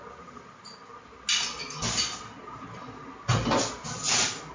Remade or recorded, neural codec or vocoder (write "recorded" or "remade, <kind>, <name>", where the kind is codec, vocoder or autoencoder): recorded